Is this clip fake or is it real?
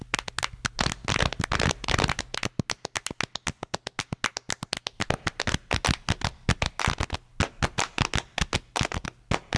real